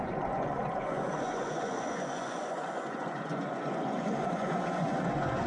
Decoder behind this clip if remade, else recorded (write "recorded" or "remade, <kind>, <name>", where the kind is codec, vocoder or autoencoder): remade, vocoder, Vocos